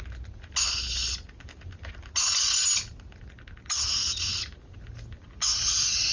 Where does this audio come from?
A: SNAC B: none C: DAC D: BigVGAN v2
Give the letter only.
B